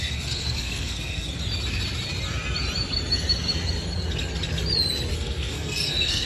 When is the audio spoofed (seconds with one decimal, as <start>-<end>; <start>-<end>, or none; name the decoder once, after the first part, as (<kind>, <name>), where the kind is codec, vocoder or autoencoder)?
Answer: 0.0-1.4 (codec, SNAC); 5.1-6.3